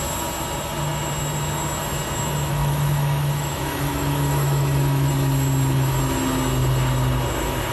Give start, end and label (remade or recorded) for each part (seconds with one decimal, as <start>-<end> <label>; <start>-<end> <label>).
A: 0.0-2.5 recorded; 2.5-5.1 remade; 5.1-7.7 recorded